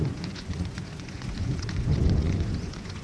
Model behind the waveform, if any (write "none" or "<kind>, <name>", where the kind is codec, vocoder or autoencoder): vocoder, Vocos